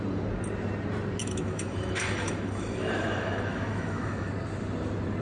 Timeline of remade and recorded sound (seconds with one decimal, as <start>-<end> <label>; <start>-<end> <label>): 0.0-1.2 recorded; 1.2-4.3 remade; 4.3-5.2 recorded